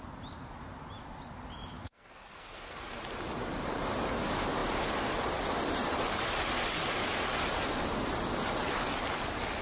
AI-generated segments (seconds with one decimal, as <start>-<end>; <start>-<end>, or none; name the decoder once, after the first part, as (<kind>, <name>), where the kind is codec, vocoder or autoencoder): 1.8-3.0 (codec, SNAC)